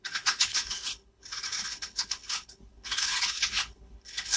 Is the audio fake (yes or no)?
yes